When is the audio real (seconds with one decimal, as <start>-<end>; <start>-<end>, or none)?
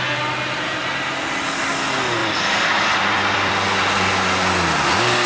0.0-2.2; 4.1-5.3